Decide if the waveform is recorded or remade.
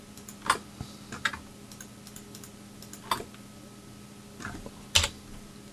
recorded